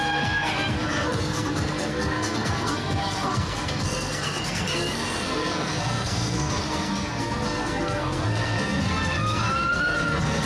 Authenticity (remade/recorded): remade